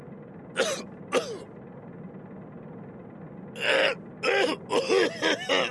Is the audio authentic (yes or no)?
yes